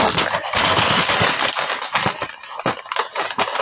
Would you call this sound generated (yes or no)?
no